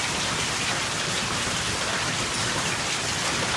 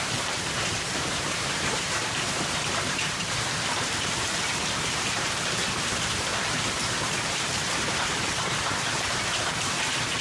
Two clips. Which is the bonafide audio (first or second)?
first